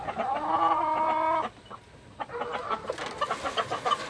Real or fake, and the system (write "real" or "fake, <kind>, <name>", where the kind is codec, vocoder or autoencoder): real